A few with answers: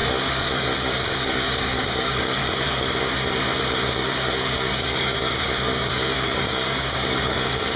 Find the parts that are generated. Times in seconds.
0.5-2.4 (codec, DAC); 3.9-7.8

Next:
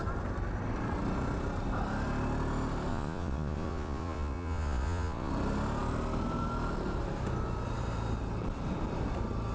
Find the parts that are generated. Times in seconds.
2.9-5.3 (vocoder, Vocos)

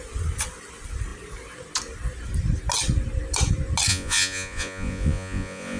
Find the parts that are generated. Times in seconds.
3.9-5.8 (vocoder, Vocos)

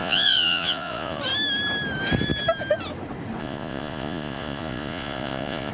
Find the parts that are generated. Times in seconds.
0.0-1.2 (vocoder, Vocos); 3.4-5.7

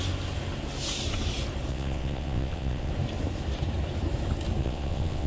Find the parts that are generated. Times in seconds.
1.7-2.9 (vocoder, WaveNeXt); 4.6-5.3

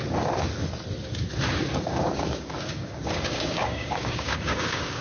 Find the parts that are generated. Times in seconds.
1.9-5.0 (codec, DAC)